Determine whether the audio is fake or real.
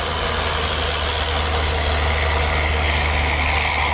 real